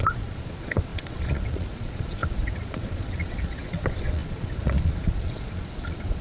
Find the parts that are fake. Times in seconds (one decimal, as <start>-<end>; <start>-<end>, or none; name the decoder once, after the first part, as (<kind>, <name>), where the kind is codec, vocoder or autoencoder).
0.0-6.2 (vocoder, Vocos)